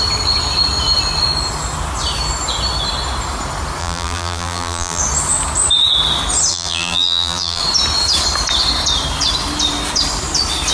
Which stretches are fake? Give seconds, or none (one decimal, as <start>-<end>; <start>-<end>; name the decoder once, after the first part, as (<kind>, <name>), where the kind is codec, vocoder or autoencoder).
3.8-5.0 (vocoder, BigVGAN v2); 6.5-7.6